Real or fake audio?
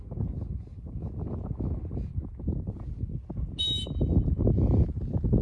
real